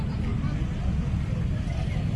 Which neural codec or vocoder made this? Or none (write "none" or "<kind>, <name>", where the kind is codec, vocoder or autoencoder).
none